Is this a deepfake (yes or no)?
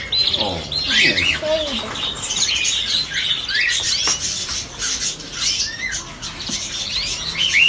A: no